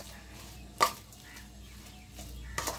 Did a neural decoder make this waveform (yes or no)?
no